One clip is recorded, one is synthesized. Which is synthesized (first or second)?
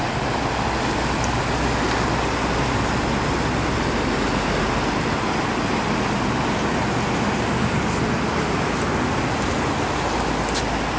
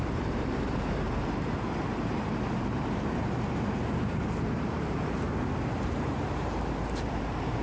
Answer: second